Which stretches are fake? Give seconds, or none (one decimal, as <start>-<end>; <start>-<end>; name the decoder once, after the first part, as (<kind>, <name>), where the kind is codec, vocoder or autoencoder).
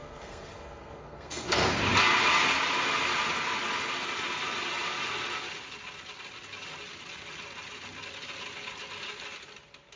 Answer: 0.0-1.8 (codec, SNAC)